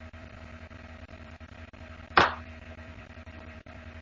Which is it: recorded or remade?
remade